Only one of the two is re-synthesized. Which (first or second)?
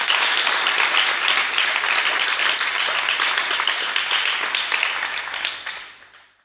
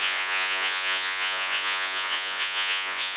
second